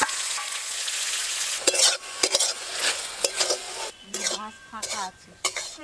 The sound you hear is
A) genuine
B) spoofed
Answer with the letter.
B